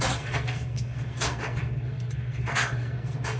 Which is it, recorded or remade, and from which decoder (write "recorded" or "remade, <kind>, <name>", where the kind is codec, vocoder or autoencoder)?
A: remade, codec, SNAC